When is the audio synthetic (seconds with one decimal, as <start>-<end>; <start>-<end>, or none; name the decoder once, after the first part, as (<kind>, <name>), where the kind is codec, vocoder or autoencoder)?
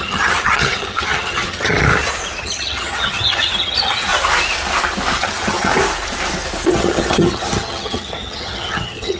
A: 0.0-1.7 (vocoder, HiFi-GAN); 2.4-4.1; 5.2-5.7; 6.7-9.2